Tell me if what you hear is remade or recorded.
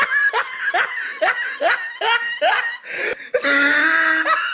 recorded